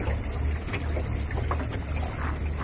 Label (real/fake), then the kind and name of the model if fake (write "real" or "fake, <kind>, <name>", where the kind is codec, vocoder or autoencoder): real